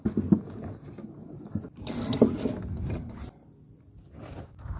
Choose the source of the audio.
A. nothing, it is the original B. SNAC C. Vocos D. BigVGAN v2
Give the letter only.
A